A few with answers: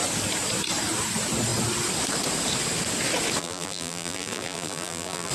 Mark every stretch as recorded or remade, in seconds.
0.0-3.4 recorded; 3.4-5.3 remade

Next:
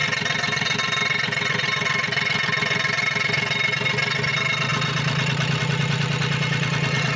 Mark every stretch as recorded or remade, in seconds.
0.0-7.2 recorded

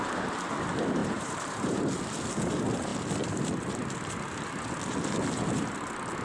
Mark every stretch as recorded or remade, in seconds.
0.0-1.0 recorded; 1.0-1.9 remade; 1.9-6.2 recorded

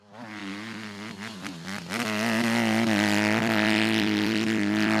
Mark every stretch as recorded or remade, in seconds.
0.0-0.4 remade; 0.4-3.4 recorded; 3.4-5.0 remade